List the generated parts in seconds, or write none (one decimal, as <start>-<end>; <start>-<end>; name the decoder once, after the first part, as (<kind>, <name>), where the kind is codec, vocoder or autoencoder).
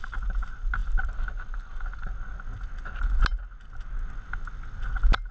none